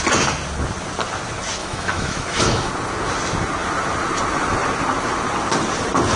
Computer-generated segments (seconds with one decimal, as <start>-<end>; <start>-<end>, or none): 1.6-2.7